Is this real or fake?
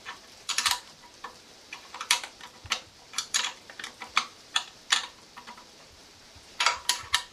fake